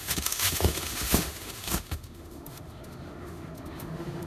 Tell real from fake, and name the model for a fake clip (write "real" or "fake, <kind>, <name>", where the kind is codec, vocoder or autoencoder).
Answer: fake, autoencoder, DAC-VAE